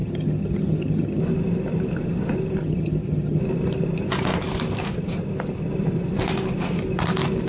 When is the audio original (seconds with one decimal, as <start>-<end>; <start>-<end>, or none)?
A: 1.2-2.6; 3.4-7.5